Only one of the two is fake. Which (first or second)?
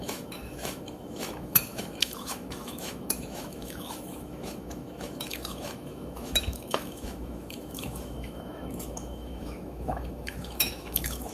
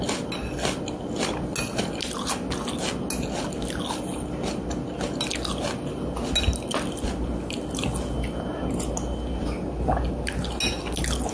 first